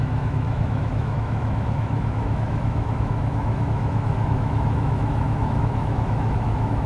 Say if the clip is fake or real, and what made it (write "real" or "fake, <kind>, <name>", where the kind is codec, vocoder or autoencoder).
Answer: fake, autoencoder, DAC-VAE